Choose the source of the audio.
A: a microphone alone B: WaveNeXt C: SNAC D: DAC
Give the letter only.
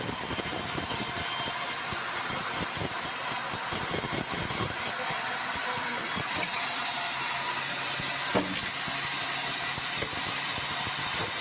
A